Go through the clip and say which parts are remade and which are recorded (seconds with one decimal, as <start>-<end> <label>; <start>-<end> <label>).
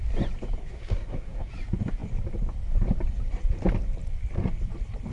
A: 0.0-0.6 recorded; 0.6-1.5 remade; 1.5-5.1 recorded